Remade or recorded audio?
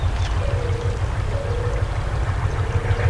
recorded